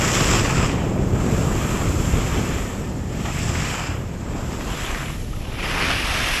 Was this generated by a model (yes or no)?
no